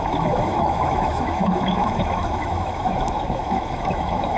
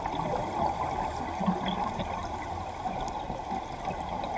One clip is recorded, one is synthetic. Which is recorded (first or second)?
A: second